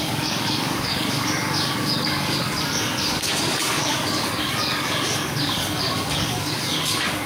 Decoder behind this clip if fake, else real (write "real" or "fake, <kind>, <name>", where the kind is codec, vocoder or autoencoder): fake, codec, DAC